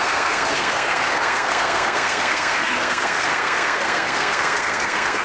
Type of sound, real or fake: fake